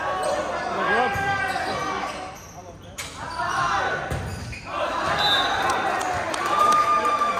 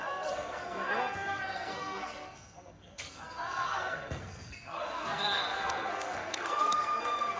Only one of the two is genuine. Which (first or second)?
first